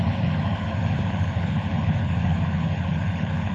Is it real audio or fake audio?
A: fake